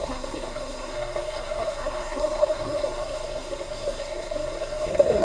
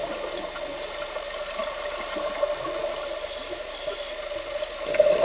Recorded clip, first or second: second